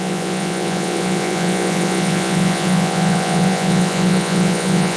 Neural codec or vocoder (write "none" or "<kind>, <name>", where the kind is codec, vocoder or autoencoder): vocoder, Vocos